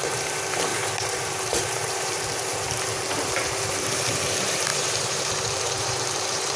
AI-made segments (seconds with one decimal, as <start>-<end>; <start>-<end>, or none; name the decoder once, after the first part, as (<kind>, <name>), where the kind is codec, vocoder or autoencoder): 0.0-6.6 (vocoder, BigVGAN v2)